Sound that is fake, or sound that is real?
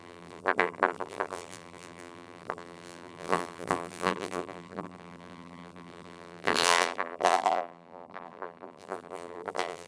fake